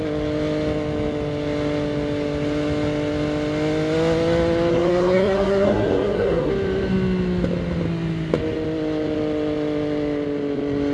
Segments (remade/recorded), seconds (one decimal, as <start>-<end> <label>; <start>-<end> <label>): 0.0-4.7 recorded; 4.7-6.5 remade; 6.5-10.9 recorded